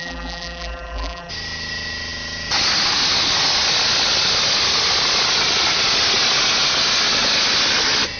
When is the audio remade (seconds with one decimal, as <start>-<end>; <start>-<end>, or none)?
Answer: 0.0-1.3